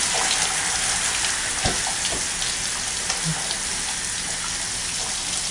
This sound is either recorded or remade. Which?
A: recorded